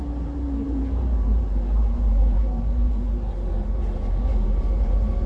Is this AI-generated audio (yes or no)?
yes